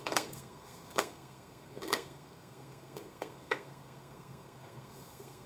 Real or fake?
fake